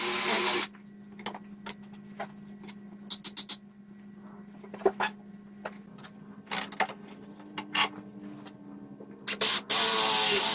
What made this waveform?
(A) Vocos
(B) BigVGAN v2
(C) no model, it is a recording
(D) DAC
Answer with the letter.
C